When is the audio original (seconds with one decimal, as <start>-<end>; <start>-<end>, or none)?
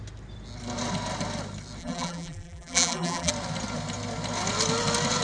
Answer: 0.0-1.8; 3.3-5.2